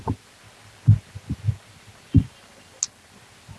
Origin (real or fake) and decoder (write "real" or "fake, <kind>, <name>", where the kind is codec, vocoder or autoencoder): real